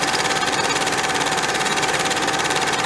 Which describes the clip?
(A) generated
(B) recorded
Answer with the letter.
A